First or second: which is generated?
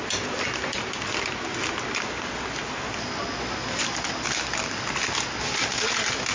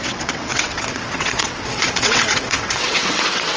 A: second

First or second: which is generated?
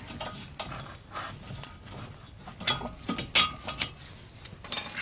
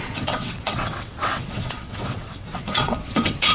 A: second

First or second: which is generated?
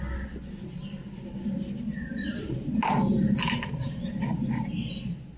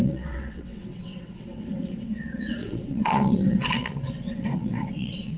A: second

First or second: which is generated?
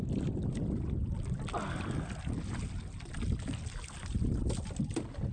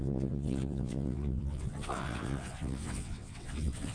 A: second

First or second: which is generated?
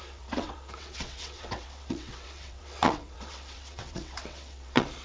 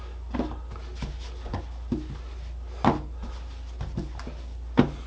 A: first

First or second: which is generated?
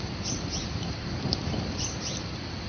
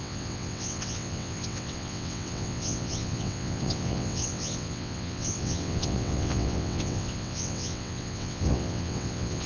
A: second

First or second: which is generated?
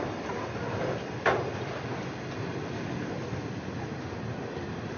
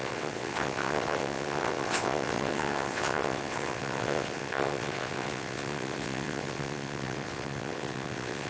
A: second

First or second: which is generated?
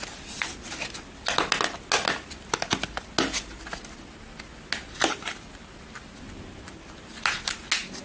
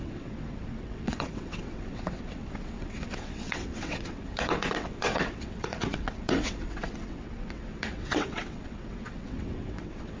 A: second